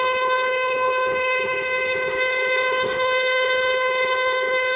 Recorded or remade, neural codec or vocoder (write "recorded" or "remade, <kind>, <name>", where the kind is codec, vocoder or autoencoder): remade, codec, HILCodec